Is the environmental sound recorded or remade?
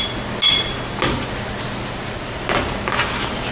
recorded